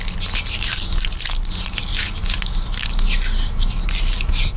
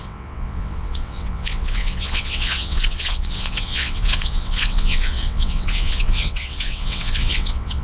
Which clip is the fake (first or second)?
second